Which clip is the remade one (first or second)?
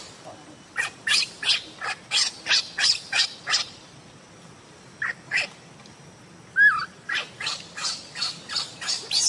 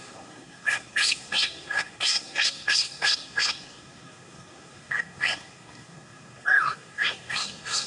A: second